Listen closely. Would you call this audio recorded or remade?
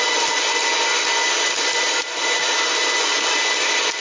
recorded